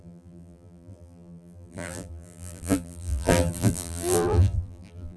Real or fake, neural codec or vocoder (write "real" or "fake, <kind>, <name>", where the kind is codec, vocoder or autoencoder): fake, vocoder, BigVGAN v2